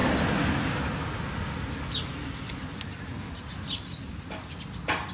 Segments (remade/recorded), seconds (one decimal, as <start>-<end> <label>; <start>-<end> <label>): 0.0-5.1 recorded